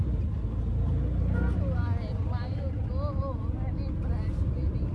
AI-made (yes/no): no